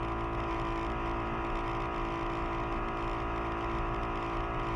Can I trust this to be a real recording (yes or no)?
yes